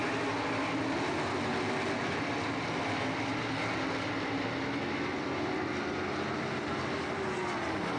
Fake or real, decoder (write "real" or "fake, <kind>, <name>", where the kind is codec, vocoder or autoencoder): real